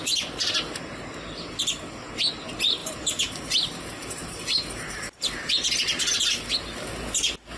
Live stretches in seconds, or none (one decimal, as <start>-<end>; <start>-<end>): 0.0-2.8; 5.5-7.6